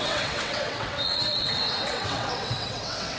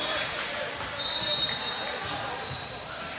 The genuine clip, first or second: second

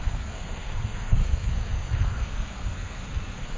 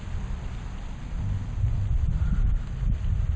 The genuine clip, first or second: second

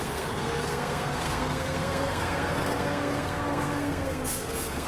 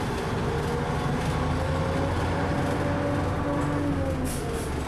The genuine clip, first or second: second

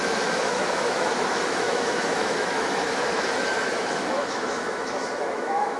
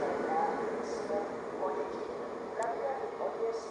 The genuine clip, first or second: second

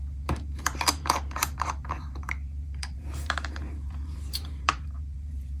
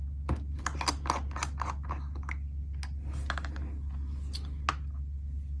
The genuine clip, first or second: second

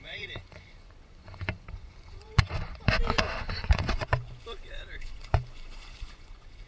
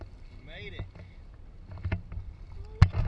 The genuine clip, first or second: second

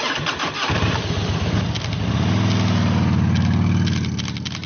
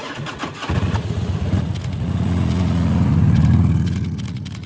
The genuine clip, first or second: first